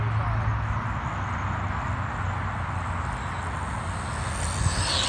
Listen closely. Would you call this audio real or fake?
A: real